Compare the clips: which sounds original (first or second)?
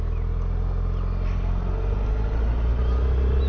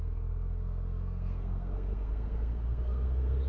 first